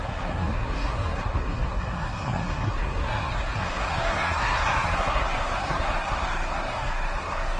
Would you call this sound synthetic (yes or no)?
yes